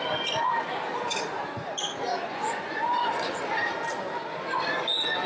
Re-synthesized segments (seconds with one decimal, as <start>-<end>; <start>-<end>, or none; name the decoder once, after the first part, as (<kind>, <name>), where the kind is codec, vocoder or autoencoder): 2.1-3.4 (vocoder, Vocos)